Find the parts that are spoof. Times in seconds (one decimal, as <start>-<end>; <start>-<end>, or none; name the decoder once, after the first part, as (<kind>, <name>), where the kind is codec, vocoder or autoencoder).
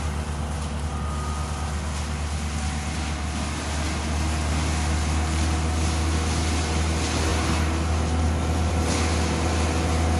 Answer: none